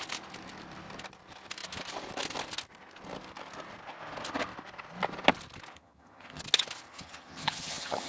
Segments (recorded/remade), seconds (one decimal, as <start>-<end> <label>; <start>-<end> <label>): 0.0-5.7 recorded; 5.7-6.4 remade; 6.4-6.9 recorded; 6.9-8.1 remade